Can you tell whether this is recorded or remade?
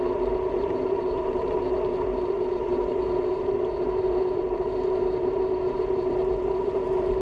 remade